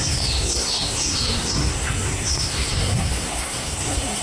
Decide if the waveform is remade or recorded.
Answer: remade